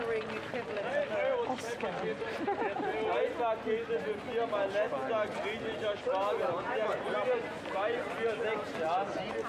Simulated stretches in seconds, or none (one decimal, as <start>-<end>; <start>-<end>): none